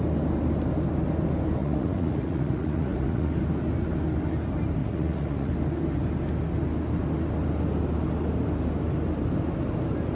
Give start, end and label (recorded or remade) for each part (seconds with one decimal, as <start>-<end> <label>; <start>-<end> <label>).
0.0-1.6 recorded; 1.6-3.3 remade; 3.3-4.8 recorded; 4.8-5.5 remade; 5.5-10.2 recorded